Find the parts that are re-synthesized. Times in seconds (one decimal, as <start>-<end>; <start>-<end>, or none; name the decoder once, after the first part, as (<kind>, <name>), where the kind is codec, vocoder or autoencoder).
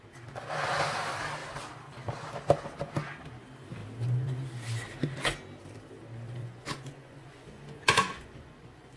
6.4-9.0 (vocoder, Vocos)